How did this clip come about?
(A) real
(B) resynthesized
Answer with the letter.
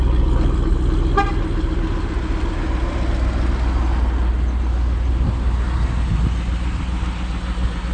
A